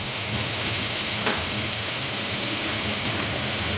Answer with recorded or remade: remade